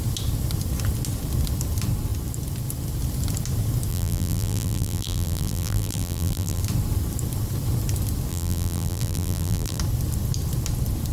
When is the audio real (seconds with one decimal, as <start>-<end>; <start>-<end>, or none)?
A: 0.0-3.9; 6.6-8.3; 9.8-11.1